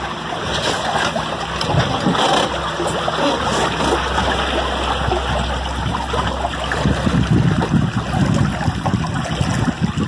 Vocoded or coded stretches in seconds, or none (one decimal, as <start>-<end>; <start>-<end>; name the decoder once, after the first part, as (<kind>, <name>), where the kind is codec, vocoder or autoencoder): none